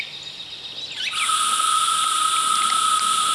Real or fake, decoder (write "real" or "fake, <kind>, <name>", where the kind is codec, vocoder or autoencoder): real